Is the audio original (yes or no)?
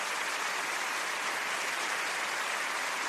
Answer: yes